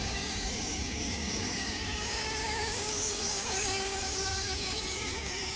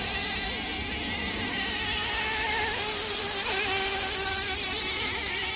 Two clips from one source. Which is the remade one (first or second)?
first